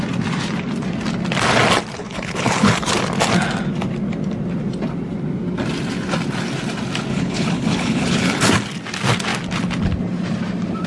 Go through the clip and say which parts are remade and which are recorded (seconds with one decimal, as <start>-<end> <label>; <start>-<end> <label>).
0.0-2.0 recorded; 2.0-2.9 remade; 2.9-7.1 recorded; 7.1-8.5 remade; 8.5-10.9 recorded